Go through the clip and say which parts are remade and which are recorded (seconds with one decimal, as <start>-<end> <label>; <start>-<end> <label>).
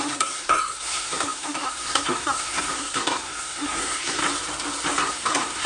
0.0-4.2 remade; 4.2-5.0 recorded; 5.0-5.7 remade